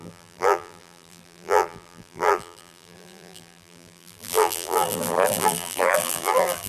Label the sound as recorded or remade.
remade